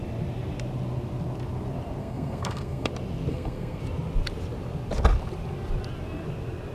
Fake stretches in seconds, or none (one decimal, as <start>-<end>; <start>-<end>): 2.0-2.9; 3.3-3.8